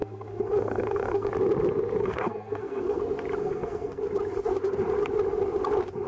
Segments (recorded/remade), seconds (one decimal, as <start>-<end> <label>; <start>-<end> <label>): 0.0-1.3 remade; 1.3-2.0 recorded; 2.0-3.0 remade; 3.0-3.4 recorded; 3.4-4.0 remade; 4.0-6.1 recorded